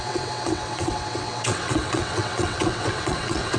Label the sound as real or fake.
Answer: fake